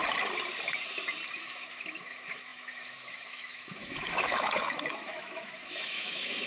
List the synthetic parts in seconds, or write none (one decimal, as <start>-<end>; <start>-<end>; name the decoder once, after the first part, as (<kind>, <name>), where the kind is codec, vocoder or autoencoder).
1.4-6.5 (autoencoder, DAC-VAE)